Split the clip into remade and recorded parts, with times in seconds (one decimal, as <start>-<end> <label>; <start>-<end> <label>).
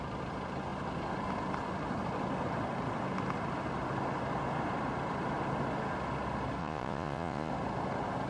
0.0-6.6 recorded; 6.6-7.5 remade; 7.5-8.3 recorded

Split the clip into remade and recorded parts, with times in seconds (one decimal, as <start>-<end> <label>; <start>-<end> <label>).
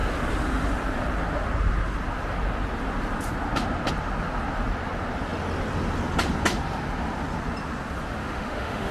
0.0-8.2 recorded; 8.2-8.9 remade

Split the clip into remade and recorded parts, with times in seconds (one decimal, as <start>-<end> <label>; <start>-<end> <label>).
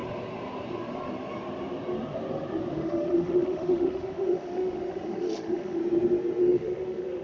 0.0-2.7 recorded; 2.7-5.8 remade; 5.8-6.4 recorded; 6.4-7.2 remade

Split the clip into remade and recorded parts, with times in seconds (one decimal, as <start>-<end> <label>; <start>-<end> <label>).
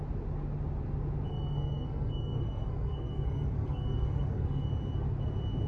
0.0-1.3 recorded; 1.3-4.7 remade; 4.7-5.7 recorded